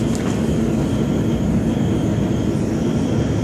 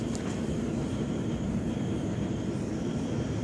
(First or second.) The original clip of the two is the first